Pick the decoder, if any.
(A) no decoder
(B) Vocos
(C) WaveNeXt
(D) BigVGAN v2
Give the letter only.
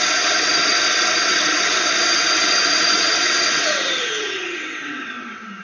C